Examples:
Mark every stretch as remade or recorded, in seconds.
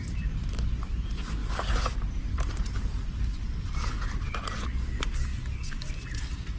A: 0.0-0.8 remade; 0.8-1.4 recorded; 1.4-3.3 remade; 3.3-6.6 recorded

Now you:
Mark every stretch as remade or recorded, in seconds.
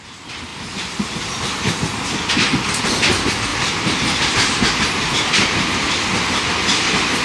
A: 0.0-0.5 recorded; 0.5-1.2 remade; 1.2-3.5 recorded; 3.5-5.9 remade; 5.9-7.2 recorded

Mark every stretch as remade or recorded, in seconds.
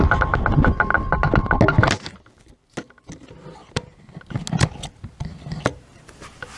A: 0.0-6.6 recorded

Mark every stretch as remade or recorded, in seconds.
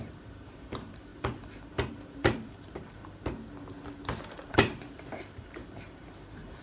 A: 0.0-3.0 remade; 3.0-4.3 recorded; 4.3-6.6 remade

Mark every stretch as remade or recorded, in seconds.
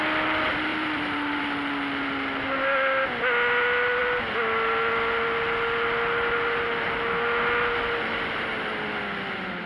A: 0.0-0.7 recorded; 0.7-1.4 remade; 1.4-9.7 recorded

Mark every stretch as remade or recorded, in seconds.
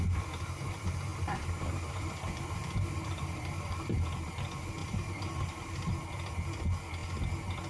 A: 0.0-1.1 recorded; 1.1-4.3 remade; 4.3-4.8 recorded; 4.8-5.9 remade; 5.9-7.7 recorded